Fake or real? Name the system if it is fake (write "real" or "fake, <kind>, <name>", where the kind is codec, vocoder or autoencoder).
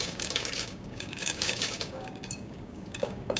fake, codec, DAC